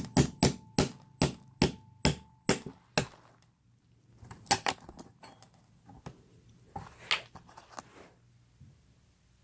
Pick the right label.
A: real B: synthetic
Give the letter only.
A